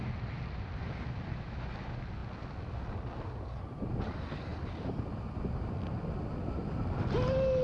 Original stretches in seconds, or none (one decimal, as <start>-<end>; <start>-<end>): 0.0-7.6